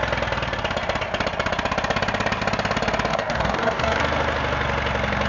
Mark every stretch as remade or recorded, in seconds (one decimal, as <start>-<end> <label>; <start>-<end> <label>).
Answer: 0.0-3.1 recorded; 3.1-4.0 remade; 4.0-5.3 recorded